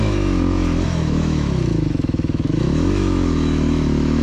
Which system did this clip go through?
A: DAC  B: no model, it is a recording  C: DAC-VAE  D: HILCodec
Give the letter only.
C